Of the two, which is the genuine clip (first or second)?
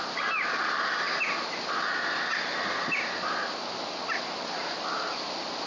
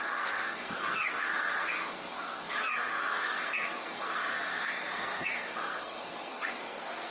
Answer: first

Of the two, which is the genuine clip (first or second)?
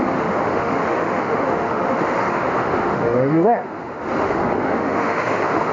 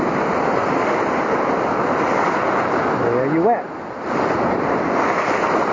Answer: second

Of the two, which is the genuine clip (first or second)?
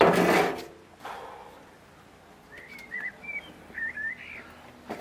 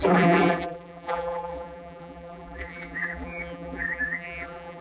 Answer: first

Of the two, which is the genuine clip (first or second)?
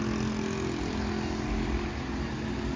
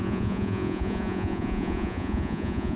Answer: first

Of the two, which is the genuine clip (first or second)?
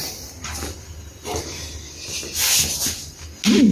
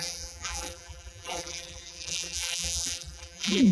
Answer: first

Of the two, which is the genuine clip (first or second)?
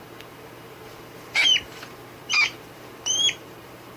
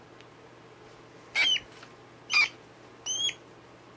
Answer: second